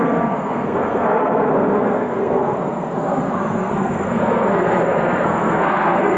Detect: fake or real fake